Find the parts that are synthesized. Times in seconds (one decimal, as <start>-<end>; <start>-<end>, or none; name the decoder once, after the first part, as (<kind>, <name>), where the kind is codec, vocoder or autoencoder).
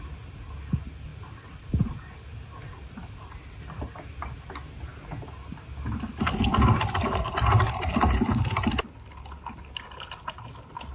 none